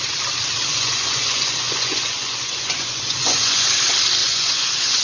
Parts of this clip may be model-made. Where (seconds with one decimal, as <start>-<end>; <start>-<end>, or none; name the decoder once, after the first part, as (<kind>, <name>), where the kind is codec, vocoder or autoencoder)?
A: 0.7-3.7 (vocoder, Vocos); 4.2-5.0